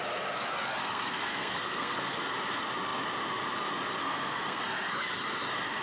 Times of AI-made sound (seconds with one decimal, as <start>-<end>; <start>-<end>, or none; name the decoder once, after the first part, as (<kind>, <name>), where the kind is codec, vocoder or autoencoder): 0.8-2.2 (codec, SNAC); 4.0-4.6